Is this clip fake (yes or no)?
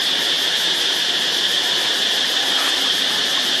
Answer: yes